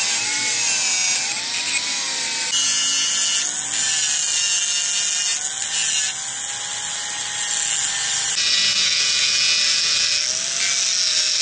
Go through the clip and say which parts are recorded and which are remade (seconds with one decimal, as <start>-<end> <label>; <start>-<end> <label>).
0.0-11.4 recorded